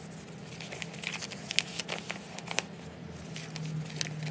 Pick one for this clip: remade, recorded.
recorded